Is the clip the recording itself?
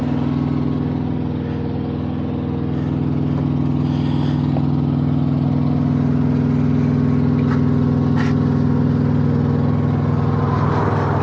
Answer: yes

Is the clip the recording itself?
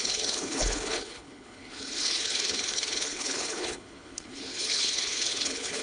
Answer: no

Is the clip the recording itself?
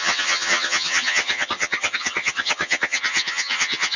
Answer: no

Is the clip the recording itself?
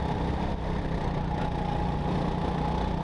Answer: yes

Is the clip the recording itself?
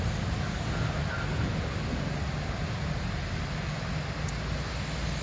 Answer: yes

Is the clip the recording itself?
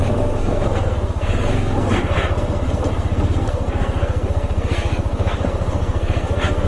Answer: no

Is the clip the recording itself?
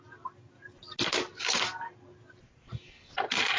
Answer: yes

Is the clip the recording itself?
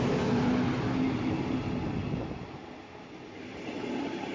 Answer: yes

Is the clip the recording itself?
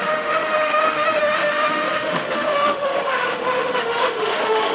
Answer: no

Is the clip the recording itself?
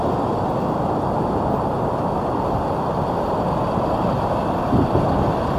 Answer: yes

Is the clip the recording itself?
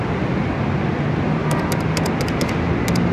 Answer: yes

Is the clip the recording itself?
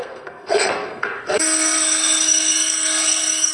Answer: no